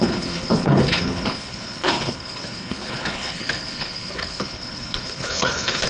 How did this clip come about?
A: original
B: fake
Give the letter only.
B